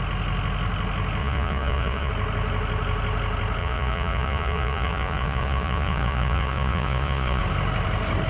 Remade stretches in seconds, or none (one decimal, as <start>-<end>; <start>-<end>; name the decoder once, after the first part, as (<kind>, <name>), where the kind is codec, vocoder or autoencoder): 1.2-2.1 (vocoder, Vocos); 3.6-7.4